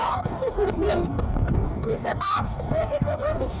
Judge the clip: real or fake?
fake